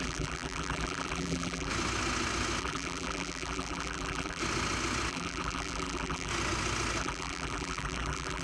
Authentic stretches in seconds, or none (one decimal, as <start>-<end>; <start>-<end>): 1.7-2.6; 4.4-5.1; 6.3-7.0